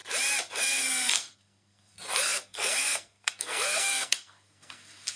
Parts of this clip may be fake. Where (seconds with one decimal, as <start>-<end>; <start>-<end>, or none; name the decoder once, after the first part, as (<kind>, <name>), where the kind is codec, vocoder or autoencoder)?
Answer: 0.5-5.2 (codec, SNAC)